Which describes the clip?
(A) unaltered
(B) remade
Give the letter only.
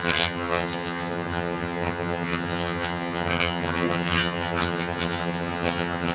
B